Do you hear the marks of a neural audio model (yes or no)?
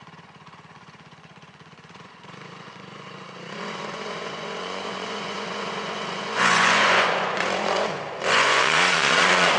yes